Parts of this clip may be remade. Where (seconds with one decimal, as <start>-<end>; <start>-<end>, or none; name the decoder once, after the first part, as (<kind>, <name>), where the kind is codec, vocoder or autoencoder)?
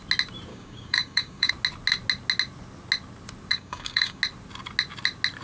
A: 0.5-1.5 (codec, DAC); 3.5-4.2